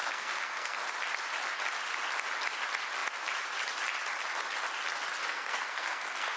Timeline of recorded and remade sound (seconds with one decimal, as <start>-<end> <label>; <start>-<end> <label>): 0.0-0.8 remade; 0.8-5.2 recorded; 5.2-6.4 remade